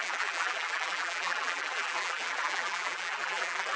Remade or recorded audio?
remade